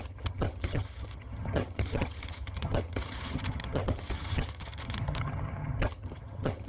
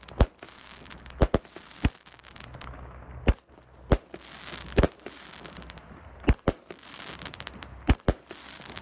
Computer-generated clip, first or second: first